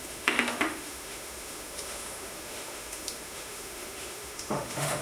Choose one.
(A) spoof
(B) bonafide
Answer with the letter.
A